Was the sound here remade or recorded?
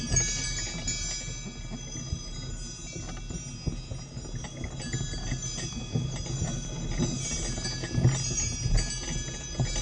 recorded